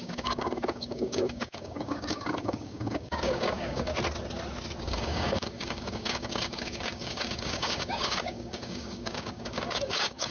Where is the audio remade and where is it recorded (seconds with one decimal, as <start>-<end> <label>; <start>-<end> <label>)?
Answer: 0.0-3.9 remade; 3.9-4.8 recorded; 4.8-10.3 remade